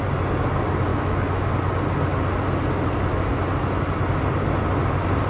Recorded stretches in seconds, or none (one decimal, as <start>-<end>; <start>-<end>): 0.0-0.9; 1.5-5.3